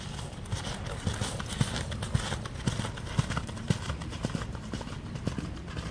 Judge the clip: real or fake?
real